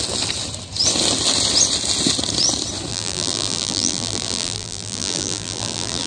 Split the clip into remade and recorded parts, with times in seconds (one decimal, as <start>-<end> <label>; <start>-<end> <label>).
0.0-2.9 recorded; 2.9-6.1 remade